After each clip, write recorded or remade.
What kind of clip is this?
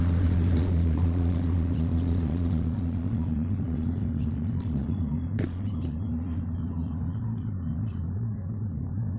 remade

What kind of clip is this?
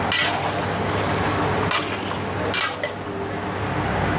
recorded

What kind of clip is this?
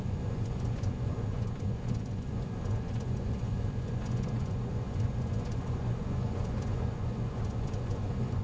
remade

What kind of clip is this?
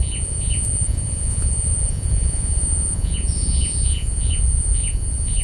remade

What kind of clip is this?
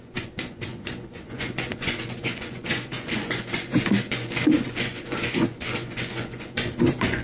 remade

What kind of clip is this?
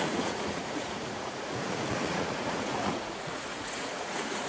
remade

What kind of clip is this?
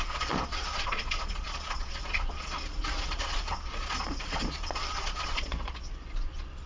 remade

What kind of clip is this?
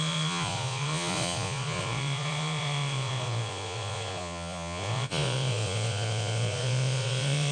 remade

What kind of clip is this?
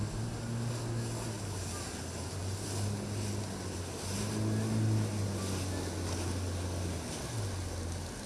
recorded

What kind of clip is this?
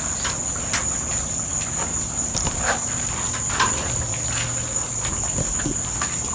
recorded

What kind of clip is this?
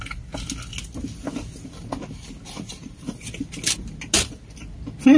recorded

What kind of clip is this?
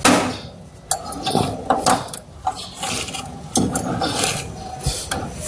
recorded